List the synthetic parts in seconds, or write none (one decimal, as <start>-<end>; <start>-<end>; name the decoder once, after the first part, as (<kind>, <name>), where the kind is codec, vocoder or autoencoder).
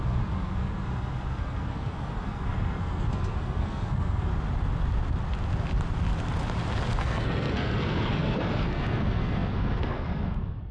0.0-4.3 (codec, SNAC); 7.0-10.7